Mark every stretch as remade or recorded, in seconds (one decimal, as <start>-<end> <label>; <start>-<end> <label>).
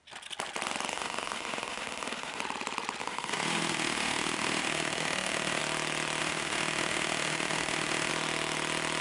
0.0-0.9 recorded; 0.9-2.4 remade; 2.4-3.0 recorded; 3.0-5.6 remade; 5.6-6.2 recorded; 6.2-8.1 remade; 8.1-9.0 recorded